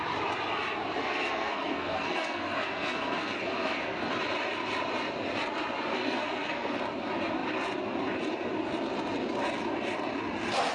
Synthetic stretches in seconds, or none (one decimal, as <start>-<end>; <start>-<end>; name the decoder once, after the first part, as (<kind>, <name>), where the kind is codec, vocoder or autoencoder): 1.0-4.1 (codec, SNAC); 5.9-6.8